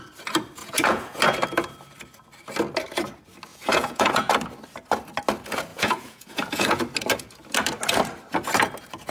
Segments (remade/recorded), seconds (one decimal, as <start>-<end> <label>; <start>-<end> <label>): 0.0-0.6 recorded; 0.6-1.2 remade; 1.2-3.5 recorded; 3.5-4.3 remade; 4.3-5.7 recorded; 5.7-6.8 remade; 6.8-9.1 recorded